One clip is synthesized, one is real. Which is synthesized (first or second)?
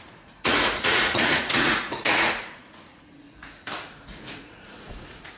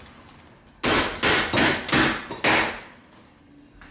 first